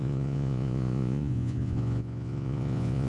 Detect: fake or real fake